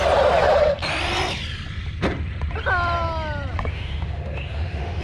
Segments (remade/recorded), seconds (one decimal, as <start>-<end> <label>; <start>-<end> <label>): 0.0-3.7 recorded; 3.7-5.0 remade